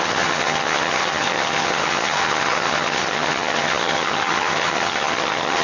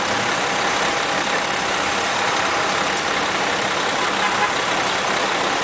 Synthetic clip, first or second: first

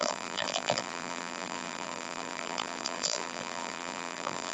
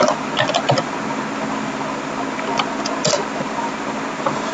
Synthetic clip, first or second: first